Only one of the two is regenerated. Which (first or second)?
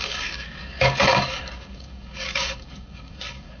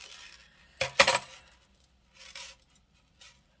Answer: first